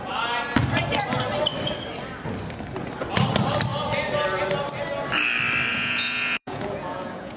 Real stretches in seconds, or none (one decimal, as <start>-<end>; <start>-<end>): 0.0-5.7